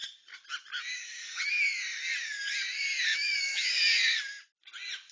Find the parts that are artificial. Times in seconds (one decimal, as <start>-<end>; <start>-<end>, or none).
3.1-3.7